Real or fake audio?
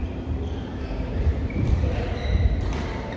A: fake